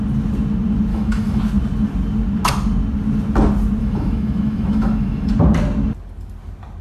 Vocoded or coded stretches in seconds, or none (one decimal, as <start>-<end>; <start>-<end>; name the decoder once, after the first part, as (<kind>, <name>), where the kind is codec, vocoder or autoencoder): 0.9-1.4 (autoencoder, DAC-VAE); 3.8-5.3